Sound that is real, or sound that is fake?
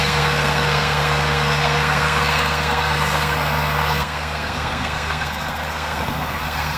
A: fake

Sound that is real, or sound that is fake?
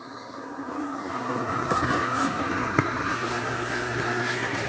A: fake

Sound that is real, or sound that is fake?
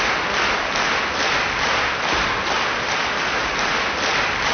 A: real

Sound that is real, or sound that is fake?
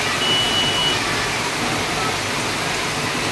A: real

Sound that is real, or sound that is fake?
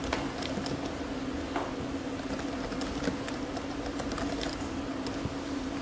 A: real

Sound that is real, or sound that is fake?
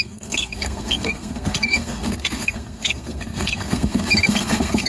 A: fake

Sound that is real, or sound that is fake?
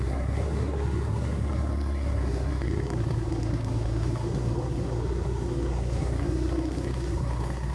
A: fake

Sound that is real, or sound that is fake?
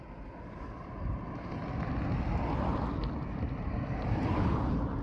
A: real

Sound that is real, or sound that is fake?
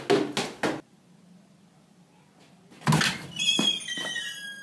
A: real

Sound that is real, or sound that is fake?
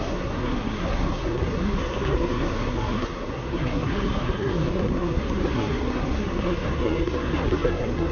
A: fake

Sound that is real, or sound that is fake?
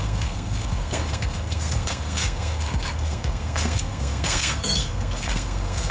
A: fake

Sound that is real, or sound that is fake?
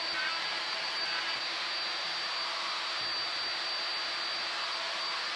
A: real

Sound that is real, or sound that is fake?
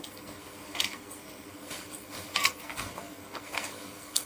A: fake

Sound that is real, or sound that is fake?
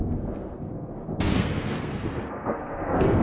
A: fake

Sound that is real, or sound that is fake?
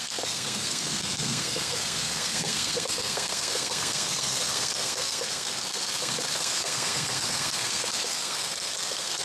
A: fake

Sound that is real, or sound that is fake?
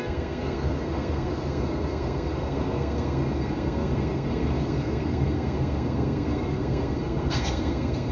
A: fake